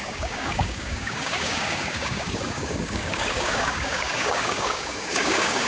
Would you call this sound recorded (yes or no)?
no